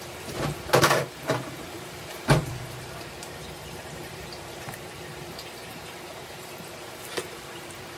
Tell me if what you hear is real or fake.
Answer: fake